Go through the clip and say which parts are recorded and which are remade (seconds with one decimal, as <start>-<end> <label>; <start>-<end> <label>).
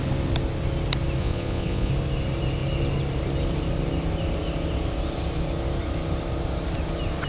0.0-1.2 recorded; 1.2-1.9 remade; 1.9-7.3 recorded